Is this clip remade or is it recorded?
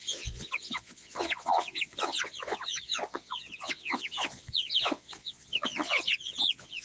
remade